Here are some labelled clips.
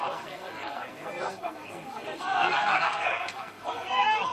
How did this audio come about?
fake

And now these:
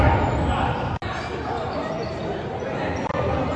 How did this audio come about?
real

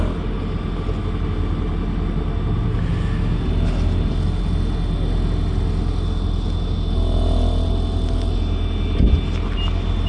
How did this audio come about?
real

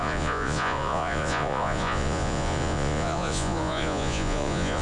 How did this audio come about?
fake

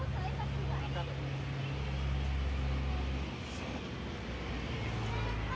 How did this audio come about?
real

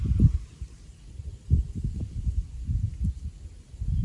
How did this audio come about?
real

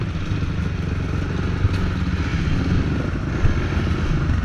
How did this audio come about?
real